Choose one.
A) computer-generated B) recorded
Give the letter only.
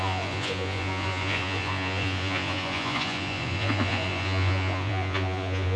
A